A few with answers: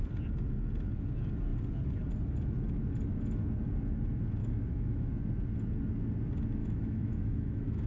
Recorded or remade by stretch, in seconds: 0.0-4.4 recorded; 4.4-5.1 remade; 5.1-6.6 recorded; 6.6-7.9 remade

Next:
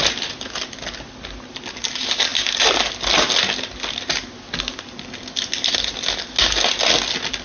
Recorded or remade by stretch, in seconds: 0.0-7.4 recorded

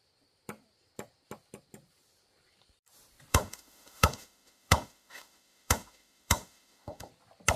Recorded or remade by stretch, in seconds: 0.0-3.3 recorded; 3.3-7.1 remade; 7.1-7.6 recorded

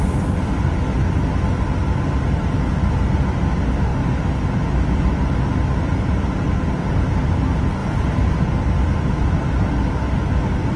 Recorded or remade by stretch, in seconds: 0.0-1.8 recorded; 1.8-2.4 remade; 2.4-7.8 recorded; 7.8-8.4 remade; 8.4-10.8 recorded

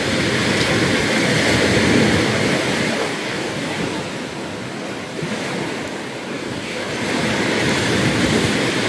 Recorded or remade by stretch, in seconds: 0.0-3.0 recorded; 3.0-3.8 remade; 3.8-6.3 recorded; 6.3-6.9 remade; 6.9-8.9 recorded

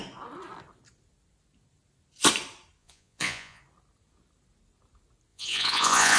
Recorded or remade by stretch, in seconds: 0.0-2.8 recorded; 2.8-3.6 remade; 3.6-5.3 recorded; 5.3-6.2 remade

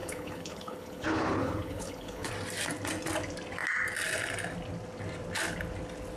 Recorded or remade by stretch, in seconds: 0.0-2.3 remade; 2.3-6.2 recorded